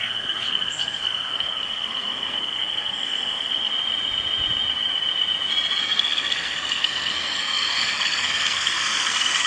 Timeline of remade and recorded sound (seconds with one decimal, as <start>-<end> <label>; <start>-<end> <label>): 0.0-3.7 remade; 3.7-5.8 recorded; 5.8-9.5 remade